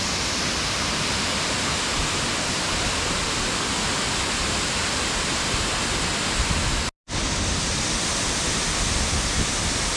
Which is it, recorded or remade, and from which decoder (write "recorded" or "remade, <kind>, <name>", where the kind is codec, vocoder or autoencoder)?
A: recorded